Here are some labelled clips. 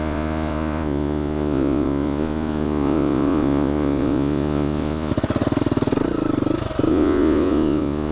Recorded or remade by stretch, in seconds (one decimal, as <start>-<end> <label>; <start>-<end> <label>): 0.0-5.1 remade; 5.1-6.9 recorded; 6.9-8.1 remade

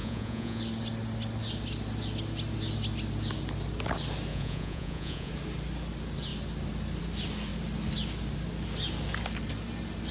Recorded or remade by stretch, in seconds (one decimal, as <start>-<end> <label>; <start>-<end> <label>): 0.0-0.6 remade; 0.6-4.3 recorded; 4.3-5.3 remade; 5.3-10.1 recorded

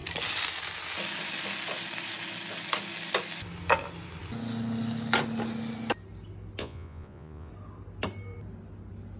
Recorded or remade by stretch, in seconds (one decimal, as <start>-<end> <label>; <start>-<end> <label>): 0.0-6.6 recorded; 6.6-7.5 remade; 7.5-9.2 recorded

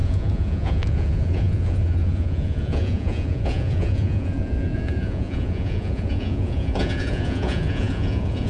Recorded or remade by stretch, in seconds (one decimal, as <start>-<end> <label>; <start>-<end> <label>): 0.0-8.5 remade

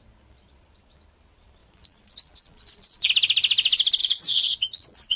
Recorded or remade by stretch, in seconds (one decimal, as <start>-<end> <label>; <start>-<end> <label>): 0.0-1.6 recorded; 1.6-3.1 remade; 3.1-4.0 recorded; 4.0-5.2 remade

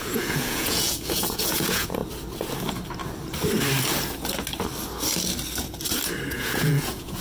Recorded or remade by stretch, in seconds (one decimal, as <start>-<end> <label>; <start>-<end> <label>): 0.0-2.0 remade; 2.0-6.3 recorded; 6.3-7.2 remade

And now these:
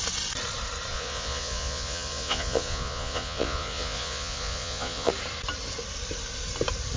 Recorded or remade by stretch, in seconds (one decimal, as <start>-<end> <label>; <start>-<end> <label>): 0.0-0.9 recorded; 0.9-5.1 remade; 5.1-7.0 recorded